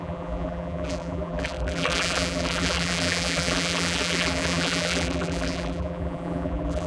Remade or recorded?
remade